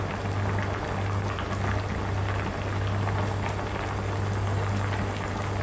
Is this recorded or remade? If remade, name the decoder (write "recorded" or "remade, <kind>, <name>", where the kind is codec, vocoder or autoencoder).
recorded